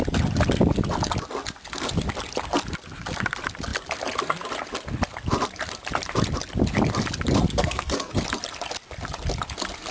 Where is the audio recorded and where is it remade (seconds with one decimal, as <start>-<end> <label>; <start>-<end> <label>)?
0.0-7.6 recorded; 7.6-8.1 remade; 8.1-9.9 recorded